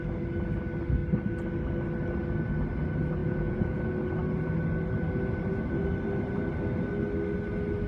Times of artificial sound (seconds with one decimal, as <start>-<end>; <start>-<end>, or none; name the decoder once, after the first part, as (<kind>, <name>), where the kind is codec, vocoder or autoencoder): 3.2-3.8 (vocoder, Vocos)